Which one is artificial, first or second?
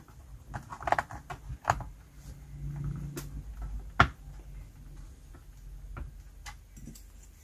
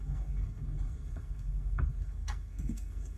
second